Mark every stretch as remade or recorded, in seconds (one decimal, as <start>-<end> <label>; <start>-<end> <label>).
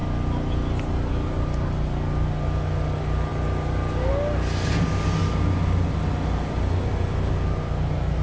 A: 0.0-8.2 recorded